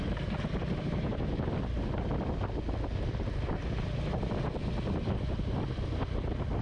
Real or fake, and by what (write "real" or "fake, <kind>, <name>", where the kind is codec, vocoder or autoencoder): fake, vocoder, BigVGAN v2